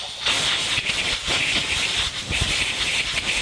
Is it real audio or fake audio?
real